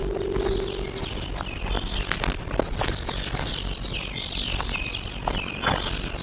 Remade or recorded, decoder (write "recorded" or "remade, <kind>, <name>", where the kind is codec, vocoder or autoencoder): recorded